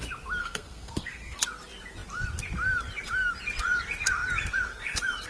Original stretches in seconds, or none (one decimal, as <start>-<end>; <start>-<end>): 0.0-0.4; 1.4-5.3